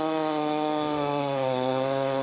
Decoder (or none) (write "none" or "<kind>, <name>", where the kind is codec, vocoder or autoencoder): codec, SNAC